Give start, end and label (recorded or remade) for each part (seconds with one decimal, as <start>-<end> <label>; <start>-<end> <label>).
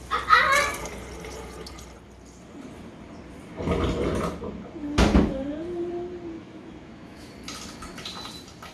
0.0-6.4 recorded; 6.4-7.3 remade; 7.3-8.7 recorded